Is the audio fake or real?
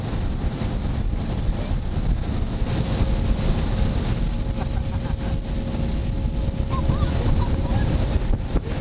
real